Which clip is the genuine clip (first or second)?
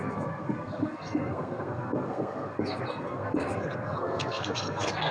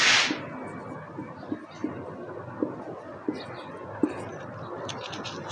second